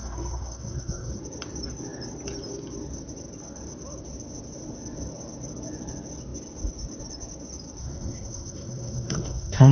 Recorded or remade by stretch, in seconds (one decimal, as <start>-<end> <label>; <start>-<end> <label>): 0.0-1.2 remade; 1.2-7.8 recorded; 7.8-9.7 remade